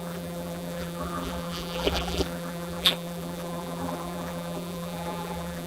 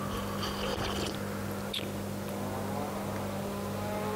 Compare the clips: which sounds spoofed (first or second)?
first